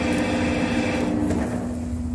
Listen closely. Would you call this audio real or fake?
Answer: real